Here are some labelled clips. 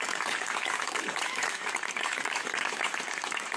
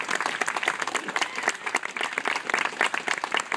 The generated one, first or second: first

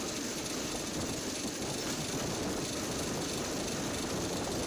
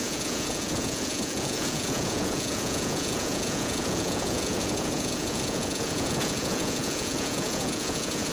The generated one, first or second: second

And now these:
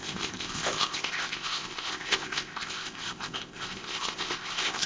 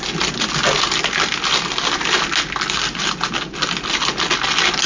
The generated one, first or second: first